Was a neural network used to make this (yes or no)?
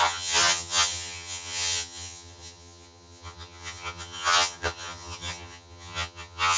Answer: yes